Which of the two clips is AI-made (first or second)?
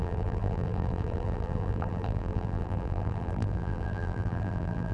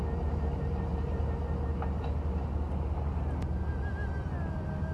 first